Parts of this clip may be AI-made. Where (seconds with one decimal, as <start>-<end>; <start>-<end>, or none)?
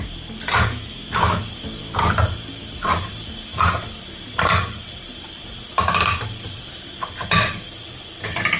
0.6-1.4